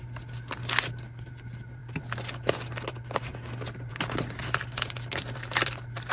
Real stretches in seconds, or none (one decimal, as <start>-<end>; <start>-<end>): 0.0-6.1